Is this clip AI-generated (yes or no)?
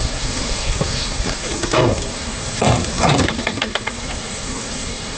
yes